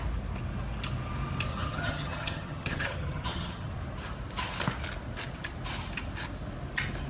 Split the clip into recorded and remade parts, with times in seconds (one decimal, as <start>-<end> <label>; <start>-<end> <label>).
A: 0.0-1.5 recorded; 1.5-3.7 remade; 3.7-7.1 recorded